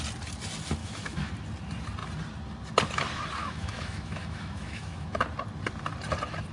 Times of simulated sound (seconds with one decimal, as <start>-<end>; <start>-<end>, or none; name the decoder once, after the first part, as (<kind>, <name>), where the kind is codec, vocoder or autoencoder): 0.8-1.3 (autoencoder, DAC-VAE); 3.4-5.2